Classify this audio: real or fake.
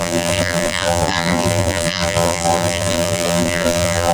fake